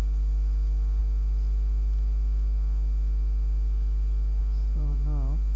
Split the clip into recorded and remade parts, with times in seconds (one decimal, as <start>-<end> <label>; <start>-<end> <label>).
0.0-5.6 recorded